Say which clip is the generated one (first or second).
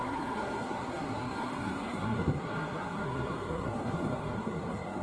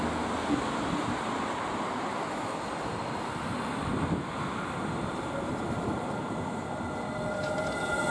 first